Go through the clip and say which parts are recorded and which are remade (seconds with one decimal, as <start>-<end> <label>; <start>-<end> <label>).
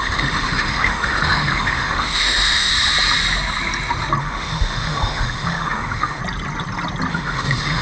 0.0-2.7 remade; 2.7-4.2 recorded; 4.2-6.2 remade; 6.2-7.1 recorded; 7.1-7.8 remade